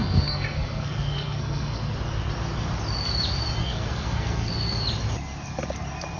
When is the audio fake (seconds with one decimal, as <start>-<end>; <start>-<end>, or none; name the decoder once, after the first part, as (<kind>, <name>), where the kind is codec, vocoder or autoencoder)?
0.0-1.9 (codec, SNAC); 3.6-4.5

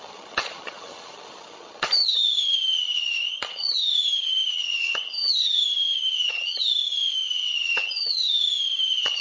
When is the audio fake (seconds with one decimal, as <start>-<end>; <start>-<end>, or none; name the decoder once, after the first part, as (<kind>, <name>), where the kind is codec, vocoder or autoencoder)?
0.0-9.2 (vocoder, HiFi-GAN)

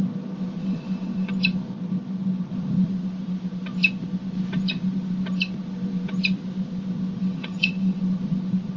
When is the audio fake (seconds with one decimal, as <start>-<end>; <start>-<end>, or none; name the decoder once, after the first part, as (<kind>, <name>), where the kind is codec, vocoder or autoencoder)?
0.6-1.3 (vocoder, WaveNeXt); 7.2-8.0